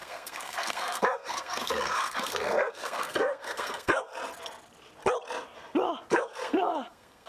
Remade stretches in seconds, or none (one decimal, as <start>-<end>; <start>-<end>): 0.0-4.1; 6.1-7.3